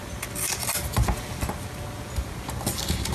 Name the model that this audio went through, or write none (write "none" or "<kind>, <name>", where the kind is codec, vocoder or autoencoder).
none